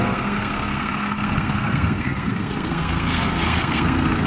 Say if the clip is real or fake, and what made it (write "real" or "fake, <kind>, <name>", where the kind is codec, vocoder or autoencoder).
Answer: fake, codec, SNAC